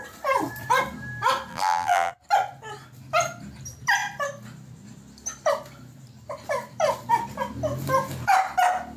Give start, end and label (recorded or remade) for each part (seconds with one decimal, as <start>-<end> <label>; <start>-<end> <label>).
0.0-1.5 recorded; 1.5-2.1 remade; 2.1-9.0 recorded